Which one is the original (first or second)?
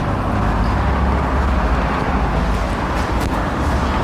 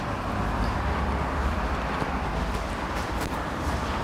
first